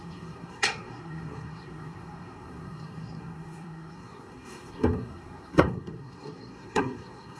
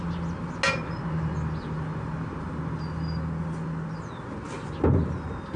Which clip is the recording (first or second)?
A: second